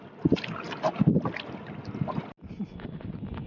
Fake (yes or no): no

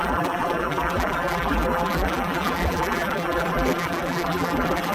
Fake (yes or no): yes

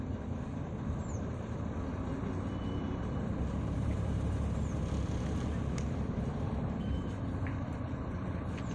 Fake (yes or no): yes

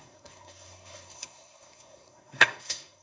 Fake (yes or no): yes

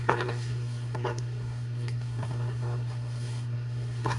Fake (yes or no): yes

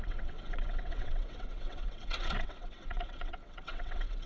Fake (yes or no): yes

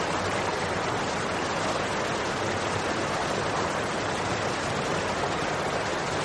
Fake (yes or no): no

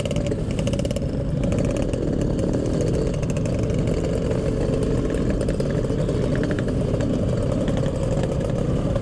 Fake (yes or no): no